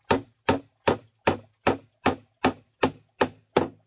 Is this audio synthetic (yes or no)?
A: no